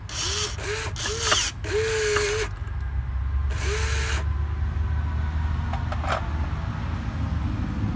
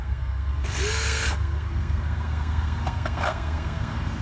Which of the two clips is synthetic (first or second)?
second